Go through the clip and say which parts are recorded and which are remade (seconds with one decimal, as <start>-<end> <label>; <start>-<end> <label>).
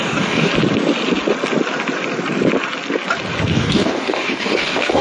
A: 0.0-0.5 remade; 0.5-3.5 recorded; 3.5-5.0 remade